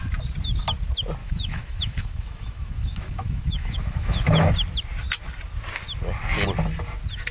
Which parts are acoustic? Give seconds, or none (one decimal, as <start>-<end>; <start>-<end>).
0.0-1.2; 4.5-7.3